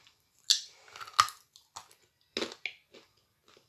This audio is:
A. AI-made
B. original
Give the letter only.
B